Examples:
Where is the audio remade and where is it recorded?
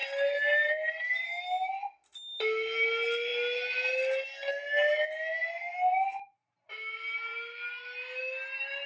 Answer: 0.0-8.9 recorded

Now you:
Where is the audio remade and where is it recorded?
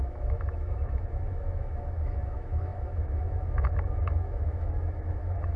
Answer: 0.0-5.6 remade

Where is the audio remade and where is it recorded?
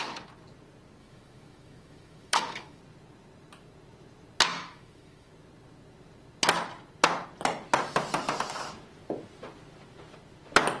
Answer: 0.0-1.0 recorded; 1.0-2.8 remade; 2.8-4.5 recorded; 4.5-5.3 remade; 5.3-10.8 recorded